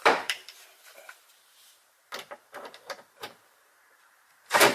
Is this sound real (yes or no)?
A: no